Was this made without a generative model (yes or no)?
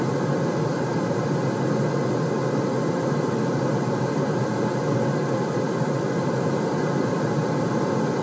yes